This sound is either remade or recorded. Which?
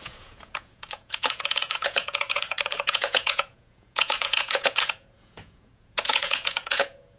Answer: remade